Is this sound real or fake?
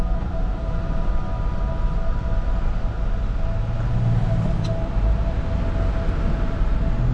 real